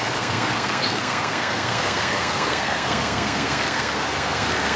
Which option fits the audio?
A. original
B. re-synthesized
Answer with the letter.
B